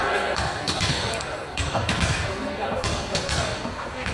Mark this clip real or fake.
fake